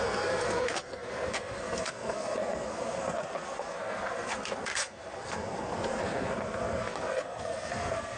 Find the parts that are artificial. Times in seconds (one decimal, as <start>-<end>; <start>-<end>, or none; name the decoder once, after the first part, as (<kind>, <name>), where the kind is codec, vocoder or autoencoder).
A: 0.0-8.2 (codec, SNAC)